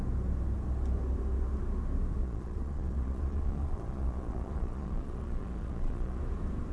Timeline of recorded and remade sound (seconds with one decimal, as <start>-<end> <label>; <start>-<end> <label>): 0.0-2.2 recorded; 2.2-6.2 remade; 6.2-6.7 recorded